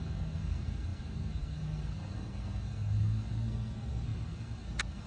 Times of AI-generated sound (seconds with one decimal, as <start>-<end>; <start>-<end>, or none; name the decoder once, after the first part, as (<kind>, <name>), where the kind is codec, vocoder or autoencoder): 0.0-5.1 (codec, SNAC)